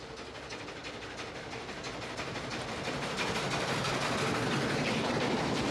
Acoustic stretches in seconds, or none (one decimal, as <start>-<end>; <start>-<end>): 0.0-5.0